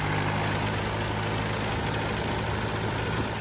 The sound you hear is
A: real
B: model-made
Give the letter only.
A